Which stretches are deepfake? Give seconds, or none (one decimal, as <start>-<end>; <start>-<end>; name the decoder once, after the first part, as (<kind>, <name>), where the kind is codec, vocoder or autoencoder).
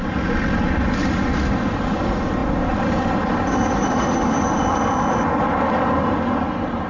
none